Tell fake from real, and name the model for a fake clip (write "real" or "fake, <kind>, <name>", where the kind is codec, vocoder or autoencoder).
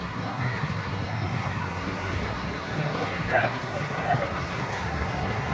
fake, codec, SNAC